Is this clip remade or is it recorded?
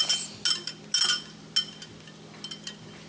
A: recorded